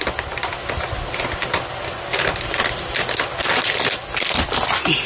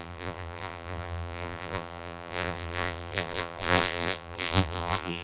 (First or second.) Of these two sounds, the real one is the first